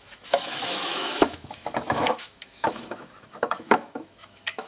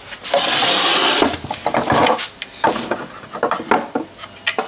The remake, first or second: first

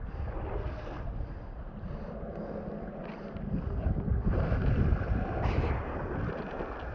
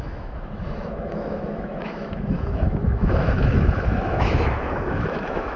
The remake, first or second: second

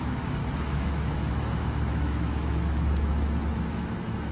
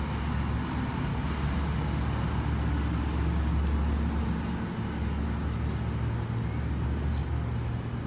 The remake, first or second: first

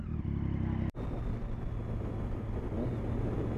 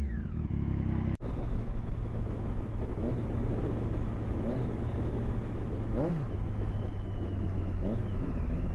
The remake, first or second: second